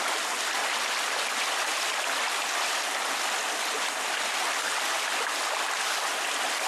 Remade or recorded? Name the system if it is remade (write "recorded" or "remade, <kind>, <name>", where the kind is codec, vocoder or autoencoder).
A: recorded